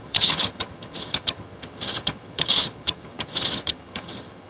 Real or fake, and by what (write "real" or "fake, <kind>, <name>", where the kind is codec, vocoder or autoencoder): fake, vocoder, HiFi-GAN